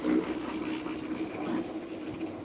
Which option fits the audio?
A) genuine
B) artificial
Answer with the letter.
A